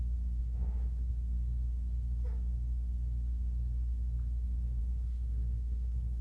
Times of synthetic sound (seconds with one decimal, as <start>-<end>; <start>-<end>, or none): 0.4-1.1; 4.8-6.2